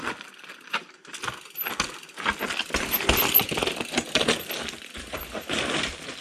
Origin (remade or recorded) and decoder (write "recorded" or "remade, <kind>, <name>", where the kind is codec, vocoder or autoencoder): recorded